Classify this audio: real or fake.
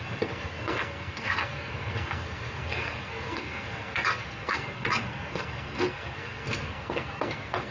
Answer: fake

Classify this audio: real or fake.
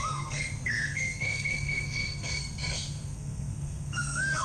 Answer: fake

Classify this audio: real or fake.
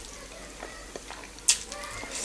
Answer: real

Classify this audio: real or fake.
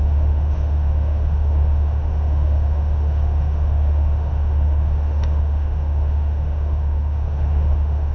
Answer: fake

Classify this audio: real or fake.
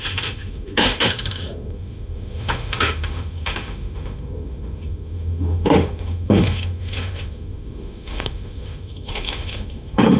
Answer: fake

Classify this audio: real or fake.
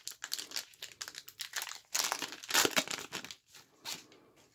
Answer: real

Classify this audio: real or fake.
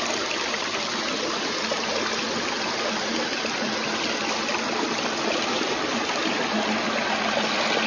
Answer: real